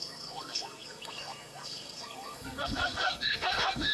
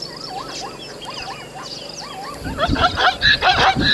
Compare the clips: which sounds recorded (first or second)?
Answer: second